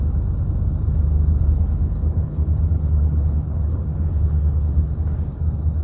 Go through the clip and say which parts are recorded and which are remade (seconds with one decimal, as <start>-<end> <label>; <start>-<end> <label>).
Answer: 0.0-1.4 recorded; 1.4-4.9 remade; 4.9-5.8 recorded